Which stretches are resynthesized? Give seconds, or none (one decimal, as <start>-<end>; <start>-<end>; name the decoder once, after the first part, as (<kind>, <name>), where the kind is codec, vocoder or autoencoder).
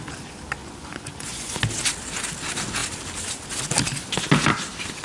0.6-1.6 (vocoder, Vocos)